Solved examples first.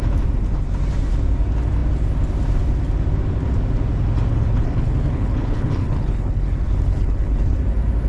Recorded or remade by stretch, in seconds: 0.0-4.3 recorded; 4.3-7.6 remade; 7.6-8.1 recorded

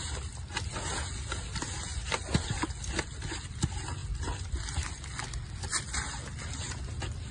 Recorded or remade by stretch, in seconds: 0.0-7.3 recorded

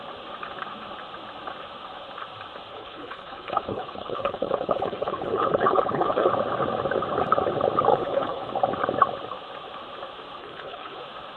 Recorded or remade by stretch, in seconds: 0.0-2.7 recorded; 2.7-6.3 remade; 6.3-7.9 recorded; 7.9-8.5 remade; 8.5-10.4 recorded; 10.4-11.0 remade; 11.0-11.4 recorded

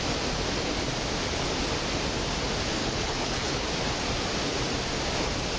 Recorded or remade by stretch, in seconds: 0.0-2.8 recorded; 2.8-3.7 remade; 3.7-5.6 recorded